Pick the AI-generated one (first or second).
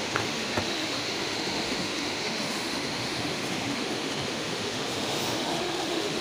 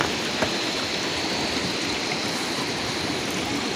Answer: first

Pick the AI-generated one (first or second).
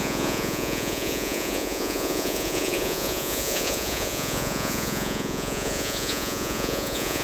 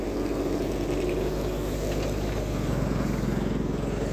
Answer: first